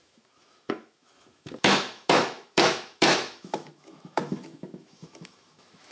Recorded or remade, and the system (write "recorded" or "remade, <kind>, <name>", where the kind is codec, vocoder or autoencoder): remade, autoencoder, DAC-VAE